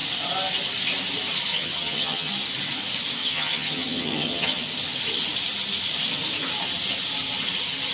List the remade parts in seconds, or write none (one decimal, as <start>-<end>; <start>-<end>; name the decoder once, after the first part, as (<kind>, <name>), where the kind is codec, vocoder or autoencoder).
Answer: 1.5-2.3 (vocoder, HiFi-GAN); 3.2-4.6